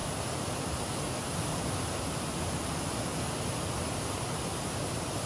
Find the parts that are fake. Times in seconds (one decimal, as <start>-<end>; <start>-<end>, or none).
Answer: none